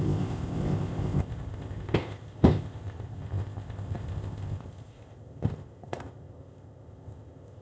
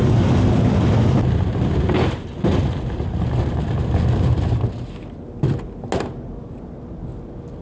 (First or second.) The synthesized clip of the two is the first